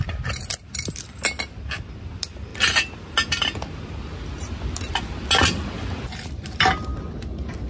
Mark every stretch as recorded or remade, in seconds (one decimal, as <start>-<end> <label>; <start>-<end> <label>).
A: 0.0-7.7 recorded